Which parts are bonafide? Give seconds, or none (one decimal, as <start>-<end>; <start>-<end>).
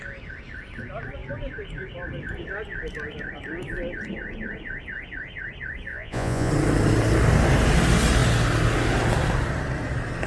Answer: 0.0-5.9; 6.5-10.3